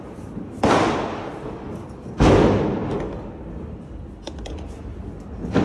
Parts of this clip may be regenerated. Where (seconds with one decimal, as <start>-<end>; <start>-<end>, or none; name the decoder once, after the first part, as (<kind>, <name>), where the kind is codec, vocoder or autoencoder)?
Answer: none